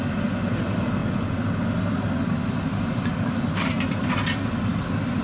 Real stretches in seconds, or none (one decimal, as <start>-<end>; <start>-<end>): 0.0-5.2